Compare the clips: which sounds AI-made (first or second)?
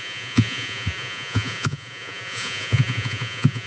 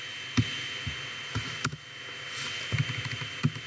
first